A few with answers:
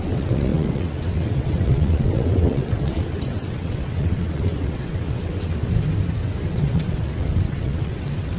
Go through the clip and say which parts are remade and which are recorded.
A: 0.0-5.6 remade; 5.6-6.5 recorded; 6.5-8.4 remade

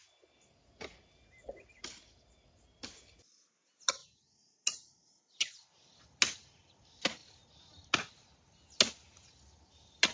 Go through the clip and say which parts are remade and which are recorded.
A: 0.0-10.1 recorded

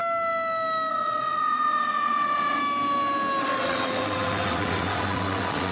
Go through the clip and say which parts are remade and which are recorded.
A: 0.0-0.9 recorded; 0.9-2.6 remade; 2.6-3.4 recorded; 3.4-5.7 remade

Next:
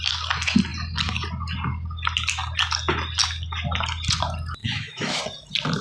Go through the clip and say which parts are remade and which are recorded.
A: 0.0-4.6 recorded; 4.6-5.2 remade; 5.2-5.8 recorded

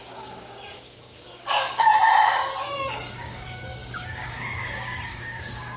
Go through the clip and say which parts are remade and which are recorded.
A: 0.0-1.9 remade; 1.9-2.9 recorded; 2.9-5.8 remade